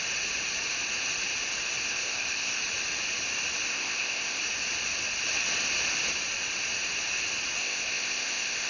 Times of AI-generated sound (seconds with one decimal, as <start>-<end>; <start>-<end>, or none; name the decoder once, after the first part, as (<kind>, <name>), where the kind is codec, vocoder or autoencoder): 1.9-2.6 (codec, ZipCodec); 3.7-4.4; 7.6-8.7